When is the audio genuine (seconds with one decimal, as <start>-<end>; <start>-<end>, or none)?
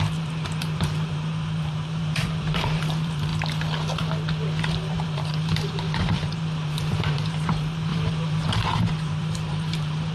3.3-4.6